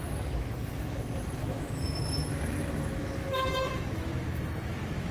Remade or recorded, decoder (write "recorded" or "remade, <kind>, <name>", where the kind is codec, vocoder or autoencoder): remade, autoencoder, DAC-VAE